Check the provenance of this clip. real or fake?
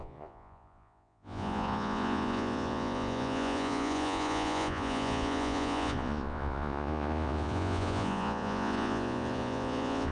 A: fake